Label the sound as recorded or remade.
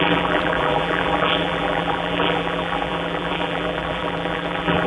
remade